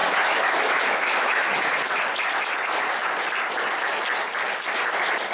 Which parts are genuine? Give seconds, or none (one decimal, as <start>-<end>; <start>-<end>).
1.7-5.3